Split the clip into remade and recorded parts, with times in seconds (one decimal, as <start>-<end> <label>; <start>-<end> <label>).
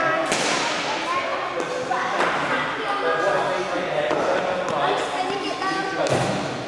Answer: 0.0-6.7 recorded